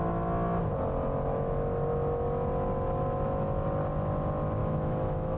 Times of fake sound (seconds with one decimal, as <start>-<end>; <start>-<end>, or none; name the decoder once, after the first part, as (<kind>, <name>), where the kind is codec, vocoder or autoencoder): 4.6-5.4 (autoencoder, DAC-VAE)